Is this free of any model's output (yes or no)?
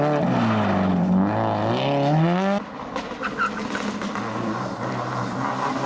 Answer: yes